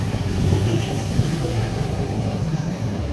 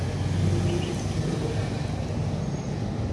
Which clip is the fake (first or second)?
first